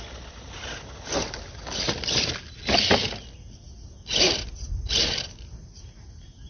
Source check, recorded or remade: recorded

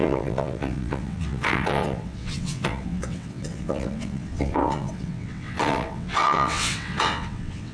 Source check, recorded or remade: remade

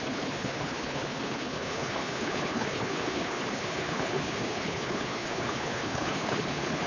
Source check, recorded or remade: remade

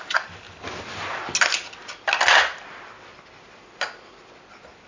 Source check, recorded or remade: recorded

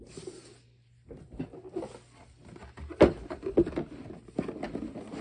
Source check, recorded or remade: recorded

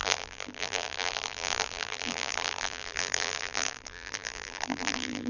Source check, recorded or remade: remade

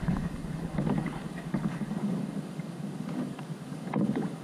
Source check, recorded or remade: remade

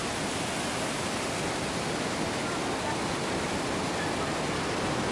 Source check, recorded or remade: recorded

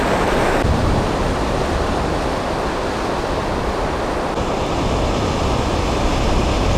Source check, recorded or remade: recorded